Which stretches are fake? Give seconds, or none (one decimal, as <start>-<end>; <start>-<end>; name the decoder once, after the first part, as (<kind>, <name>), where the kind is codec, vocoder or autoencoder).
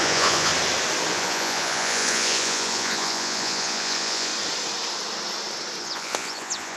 0.0-0.5 (vocoder, Vocos); 1.1-4.3; 5.8-6.8